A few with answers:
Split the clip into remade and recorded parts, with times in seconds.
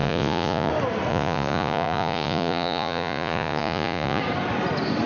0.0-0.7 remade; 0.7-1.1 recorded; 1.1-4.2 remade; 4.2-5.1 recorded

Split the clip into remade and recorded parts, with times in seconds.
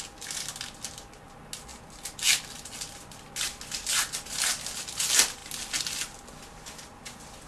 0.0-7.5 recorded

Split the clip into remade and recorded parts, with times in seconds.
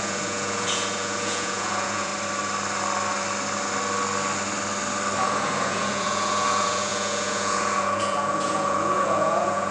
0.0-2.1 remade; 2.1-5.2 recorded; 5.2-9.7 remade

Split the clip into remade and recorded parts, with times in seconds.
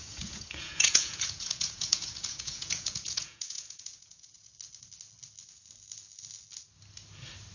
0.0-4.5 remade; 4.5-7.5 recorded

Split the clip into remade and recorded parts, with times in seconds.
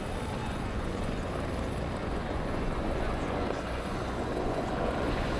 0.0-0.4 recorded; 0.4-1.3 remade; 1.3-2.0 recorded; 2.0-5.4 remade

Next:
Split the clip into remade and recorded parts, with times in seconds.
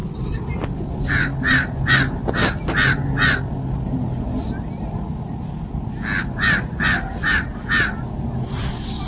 0.0-9.1 recorded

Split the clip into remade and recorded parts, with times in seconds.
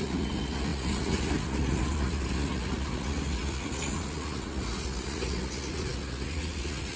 0.0-7.0 remade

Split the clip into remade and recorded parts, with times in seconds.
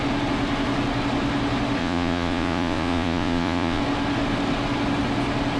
0.0-1.8 recorded; 1.8-3.8 remade; 3.8-5.6 recorded